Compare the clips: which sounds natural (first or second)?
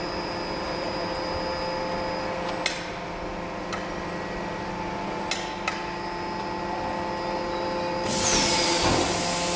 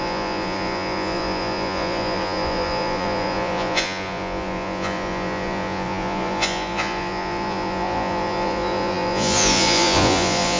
first